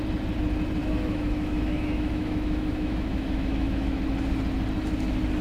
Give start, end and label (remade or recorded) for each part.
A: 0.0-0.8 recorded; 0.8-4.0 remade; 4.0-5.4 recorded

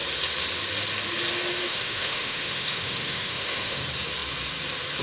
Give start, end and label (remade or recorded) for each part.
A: 0.0-1.6 recorded; 1.6-3.8 remade; 3.8-5.0 recorded